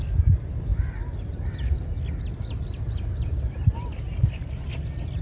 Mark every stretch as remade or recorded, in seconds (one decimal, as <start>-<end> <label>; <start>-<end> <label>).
0.0-5.2 recorded